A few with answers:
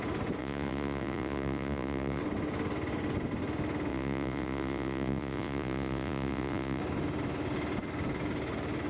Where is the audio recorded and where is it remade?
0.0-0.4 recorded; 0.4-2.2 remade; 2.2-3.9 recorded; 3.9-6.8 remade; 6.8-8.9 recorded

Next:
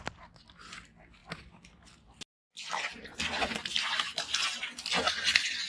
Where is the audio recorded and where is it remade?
0.0-5.7 recorded

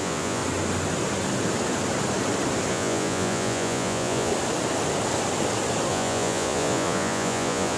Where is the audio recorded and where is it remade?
0.0-0.4 remade; 0.4-2.7 recorded; 2.7-4.3 remade; 4.3-5.9 recorded; 5.9-7.8 remade

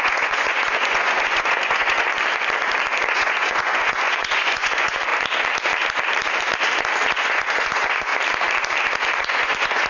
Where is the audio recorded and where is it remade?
0.0-2.1 remade; 2.1-3.1 recorded; 3.1-5.1 remade; 5.1-7.1 recorded; 7.1-8.1 remade; 8.1-9.1 recorded; 9.1-9.9 remade